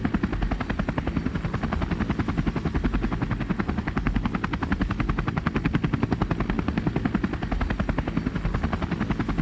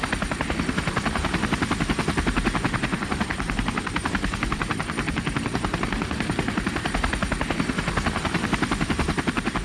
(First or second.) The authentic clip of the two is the first